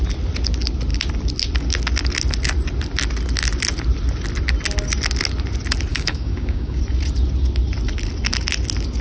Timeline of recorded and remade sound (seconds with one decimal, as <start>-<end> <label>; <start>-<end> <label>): 0.0-5.9 recorded; 5.9-6.8 remade; 6.8-9.0 recorded